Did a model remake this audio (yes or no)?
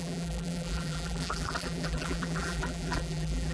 yes